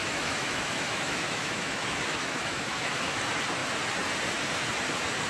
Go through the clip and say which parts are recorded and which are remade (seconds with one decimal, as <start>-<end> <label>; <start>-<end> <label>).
0.0-3.2 remade; 3.2-5.3 recorded